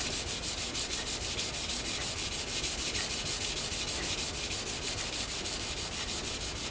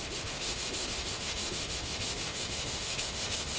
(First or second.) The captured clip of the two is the first